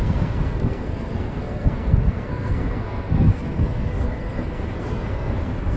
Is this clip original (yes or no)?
no